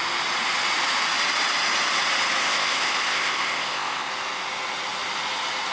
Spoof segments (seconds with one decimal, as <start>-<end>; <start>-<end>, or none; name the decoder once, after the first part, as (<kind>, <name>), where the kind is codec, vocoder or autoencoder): 2.4-4.1 (codec, ZipCodec)